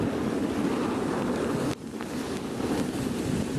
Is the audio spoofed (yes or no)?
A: no